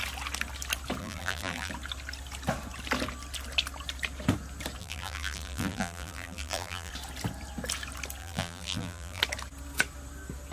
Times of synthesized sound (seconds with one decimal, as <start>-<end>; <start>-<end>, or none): 1.0-1.7; 4.8-6.9; 8.2-9.2